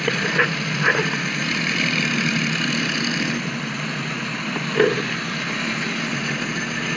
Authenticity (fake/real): real